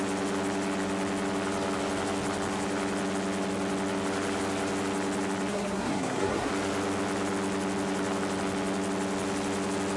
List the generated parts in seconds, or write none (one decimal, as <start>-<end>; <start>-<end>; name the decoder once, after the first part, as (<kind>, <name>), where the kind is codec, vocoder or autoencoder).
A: 5.5-6.5 (codec, SNAC)